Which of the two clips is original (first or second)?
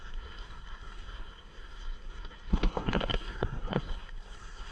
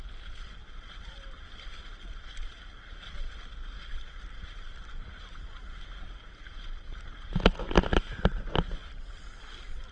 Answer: second